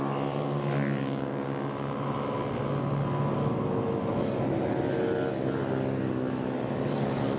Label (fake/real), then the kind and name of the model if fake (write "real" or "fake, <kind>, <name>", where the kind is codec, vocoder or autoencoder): real